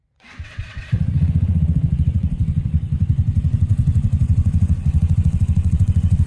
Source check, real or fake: fake